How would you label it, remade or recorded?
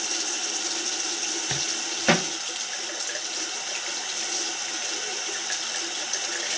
recorded